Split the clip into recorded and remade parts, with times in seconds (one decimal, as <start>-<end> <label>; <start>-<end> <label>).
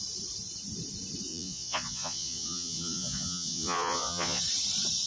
0.0-1.3 recorded; 1.3-4.4 remade; 4.4-5.1 recorded